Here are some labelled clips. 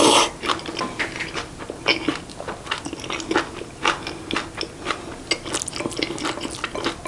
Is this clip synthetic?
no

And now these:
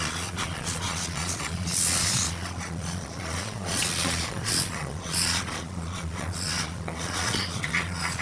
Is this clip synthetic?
yes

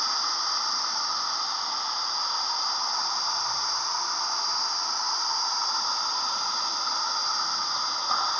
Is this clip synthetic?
no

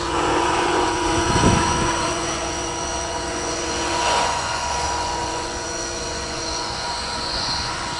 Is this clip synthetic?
yes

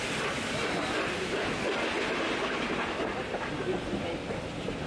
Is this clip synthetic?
no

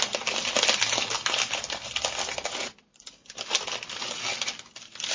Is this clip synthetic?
no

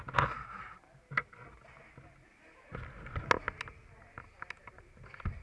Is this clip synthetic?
no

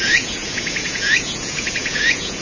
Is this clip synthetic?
yes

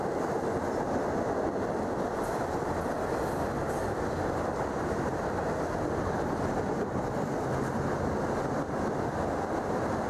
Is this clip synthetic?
no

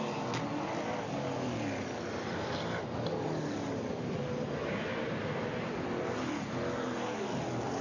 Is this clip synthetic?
no